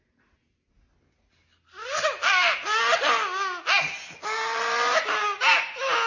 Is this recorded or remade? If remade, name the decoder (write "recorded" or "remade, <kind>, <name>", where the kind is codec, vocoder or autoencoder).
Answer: recorded